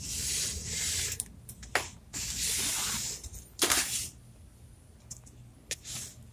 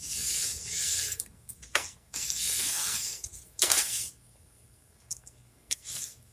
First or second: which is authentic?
first